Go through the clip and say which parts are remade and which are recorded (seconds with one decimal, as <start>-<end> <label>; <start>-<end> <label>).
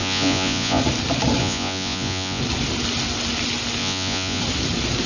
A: 0.0-0.8 remade; 0.8-1.4 recorded; 1.4-2.4 remade; 2.4-3.8 recorded; 3.8-4.4 remade; 4.4-5.1 recorded